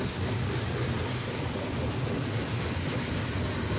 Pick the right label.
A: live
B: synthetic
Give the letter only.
A